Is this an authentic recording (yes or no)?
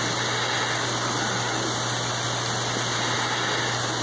yes